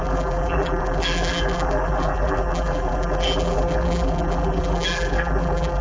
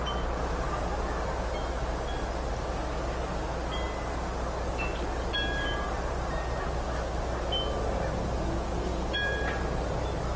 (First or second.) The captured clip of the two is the second